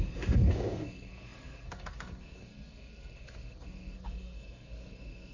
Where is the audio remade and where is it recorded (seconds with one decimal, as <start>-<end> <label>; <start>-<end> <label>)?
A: 0.0-5.3 remade